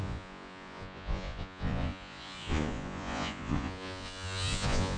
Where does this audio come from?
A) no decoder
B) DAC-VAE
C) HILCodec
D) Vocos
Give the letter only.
D